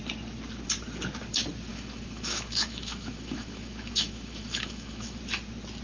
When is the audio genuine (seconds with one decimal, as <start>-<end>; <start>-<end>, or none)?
0.0-1.7; 5.2-5.8